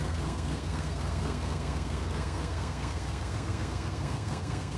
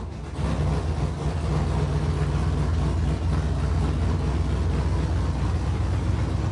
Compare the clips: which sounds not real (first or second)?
first